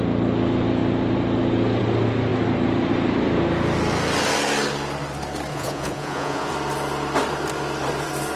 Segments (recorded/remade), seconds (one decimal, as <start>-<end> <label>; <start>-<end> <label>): 0.0-5.5 recorded; 5.5-6.5 remade; 6.5-8.4 recorded